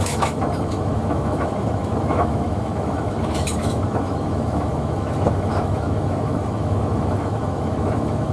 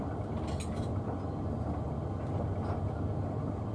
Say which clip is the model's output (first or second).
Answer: first